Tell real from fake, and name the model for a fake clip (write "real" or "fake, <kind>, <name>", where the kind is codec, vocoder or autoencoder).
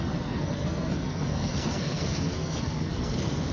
fake, codec, SNAC